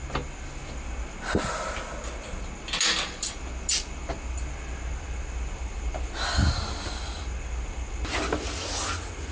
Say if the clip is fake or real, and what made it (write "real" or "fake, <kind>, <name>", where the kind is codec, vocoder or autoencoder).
real